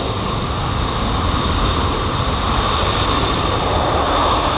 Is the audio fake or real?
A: real